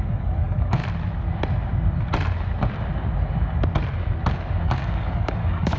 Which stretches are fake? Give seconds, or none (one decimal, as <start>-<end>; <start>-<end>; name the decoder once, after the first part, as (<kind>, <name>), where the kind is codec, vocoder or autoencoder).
0.0-0.8 (codec, DAC); 4.3-5.8